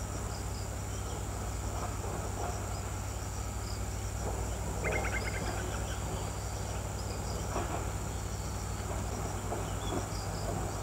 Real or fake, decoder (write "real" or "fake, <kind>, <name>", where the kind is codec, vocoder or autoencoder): real